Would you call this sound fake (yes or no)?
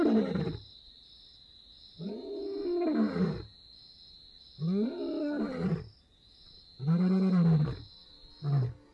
no